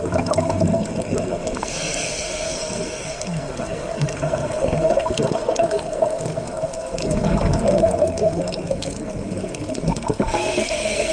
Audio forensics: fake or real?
fake